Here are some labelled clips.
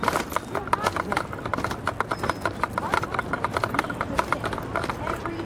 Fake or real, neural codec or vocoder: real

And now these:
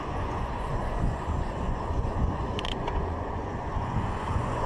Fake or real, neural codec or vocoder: fake, vocoder, Vocos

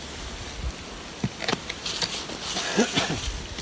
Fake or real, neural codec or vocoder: real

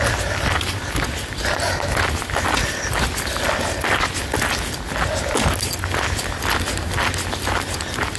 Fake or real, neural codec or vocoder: real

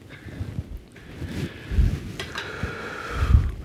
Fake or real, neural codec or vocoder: real